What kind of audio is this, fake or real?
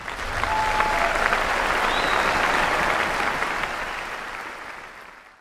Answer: real